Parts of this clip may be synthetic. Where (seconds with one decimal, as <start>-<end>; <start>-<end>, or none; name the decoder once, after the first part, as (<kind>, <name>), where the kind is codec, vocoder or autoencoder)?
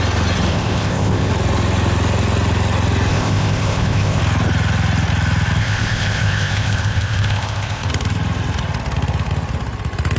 0.5-1.3 (codec, ZipCodec); 3.1-4.2; 5.6-7.9